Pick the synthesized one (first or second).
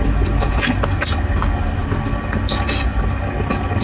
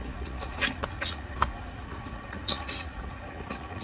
second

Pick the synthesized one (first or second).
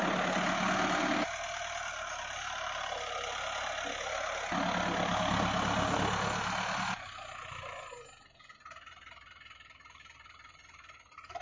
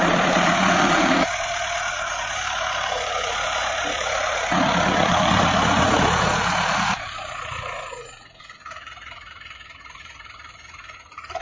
second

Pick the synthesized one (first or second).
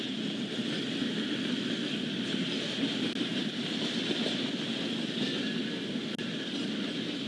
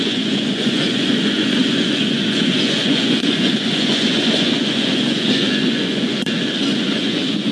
second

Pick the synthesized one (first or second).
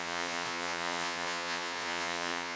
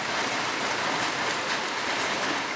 first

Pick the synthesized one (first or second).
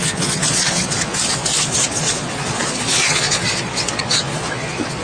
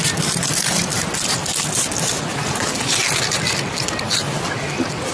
first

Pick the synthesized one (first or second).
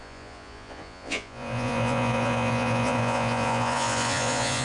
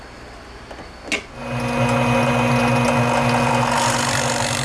first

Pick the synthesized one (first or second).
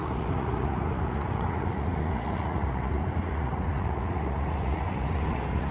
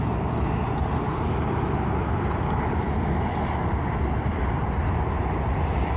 first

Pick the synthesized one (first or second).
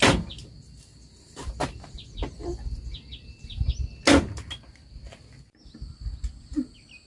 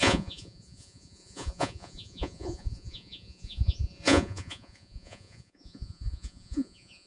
second